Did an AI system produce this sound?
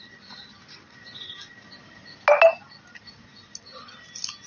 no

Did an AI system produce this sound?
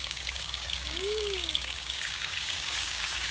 yes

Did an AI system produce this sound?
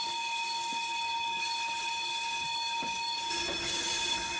no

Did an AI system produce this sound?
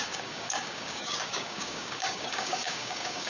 yes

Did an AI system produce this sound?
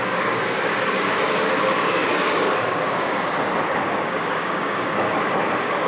yes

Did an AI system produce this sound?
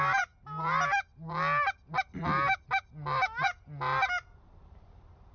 no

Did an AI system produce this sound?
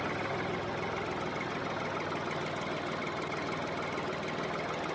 no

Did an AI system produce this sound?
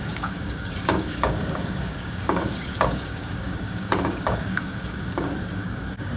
yes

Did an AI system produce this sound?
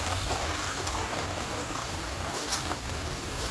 yes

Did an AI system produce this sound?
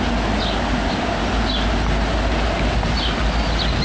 no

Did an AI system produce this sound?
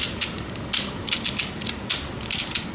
no